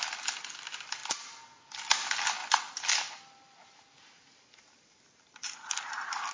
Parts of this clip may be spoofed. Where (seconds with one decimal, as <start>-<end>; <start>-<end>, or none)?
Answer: none